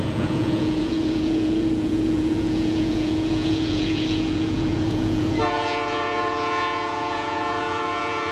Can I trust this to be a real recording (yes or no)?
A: no